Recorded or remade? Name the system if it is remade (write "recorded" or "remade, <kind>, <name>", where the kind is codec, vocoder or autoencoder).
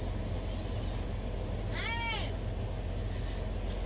recorded